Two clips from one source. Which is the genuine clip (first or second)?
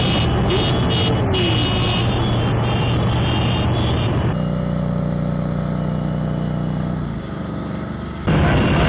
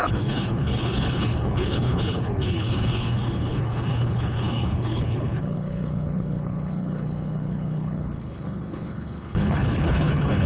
first